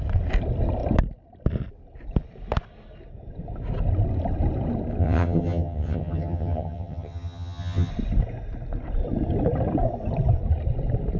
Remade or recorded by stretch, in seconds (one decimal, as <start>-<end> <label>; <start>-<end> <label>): 0.0-5.0 recorded; 5.0-7.9 remade; 7.9-11.2 recorded